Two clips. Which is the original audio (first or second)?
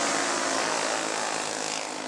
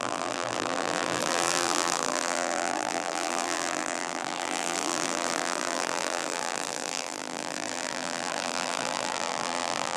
first